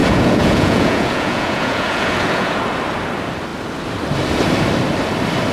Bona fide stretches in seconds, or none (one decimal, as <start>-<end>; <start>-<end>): 2.6-5.5